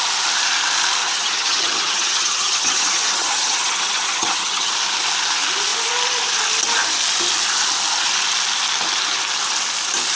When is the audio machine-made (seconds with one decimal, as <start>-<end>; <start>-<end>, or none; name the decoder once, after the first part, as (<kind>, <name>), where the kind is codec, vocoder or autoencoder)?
1.0-4.7 (vocoder, HiFi-GAN)